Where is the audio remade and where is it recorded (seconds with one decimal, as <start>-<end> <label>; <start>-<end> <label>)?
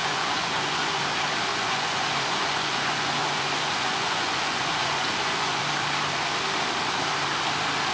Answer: 0.0-1.0 remade; 1.0-1.5 recorded; 1.5-5.6 remade; 5.6-7.9 recorded